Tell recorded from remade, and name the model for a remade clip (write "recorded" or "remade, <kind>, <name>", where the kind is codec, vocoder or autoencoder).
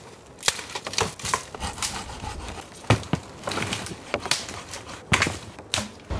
recorded